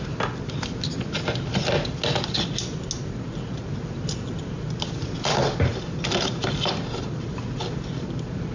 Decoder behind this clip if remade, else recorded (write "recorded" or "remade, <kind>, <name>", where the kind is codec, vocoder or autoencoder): recorded